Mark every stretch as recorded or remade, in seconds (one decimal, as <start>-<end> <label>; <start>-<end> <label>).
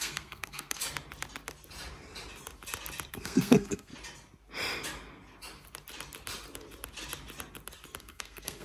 0.0-0.8 remade; 0.8-3.1 recorded; 3.1-3.9 remade; 3.9-8.0 recorded; 8.0-8.6 remade